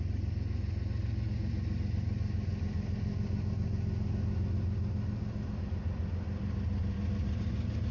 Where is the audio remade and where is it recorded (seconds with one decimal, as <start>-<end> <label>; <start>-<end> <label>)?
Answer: 0.0-7.9 recorded